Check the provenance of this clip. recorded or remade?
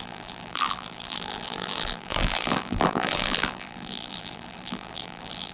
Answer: remade